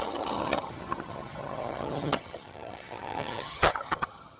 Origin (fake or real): fake